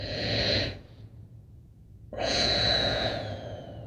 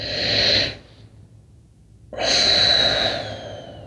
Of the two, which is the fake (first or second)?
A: first